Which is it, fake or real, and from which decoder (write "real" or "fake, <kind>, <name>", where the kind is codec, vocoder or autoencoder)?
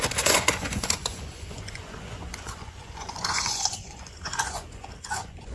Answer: fake, vocoder, Vocos